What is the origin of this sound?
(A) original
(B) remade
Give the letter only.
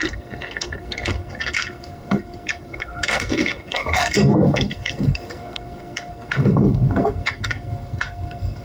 B